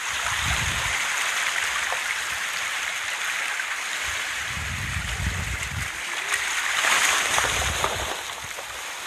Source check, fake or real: fake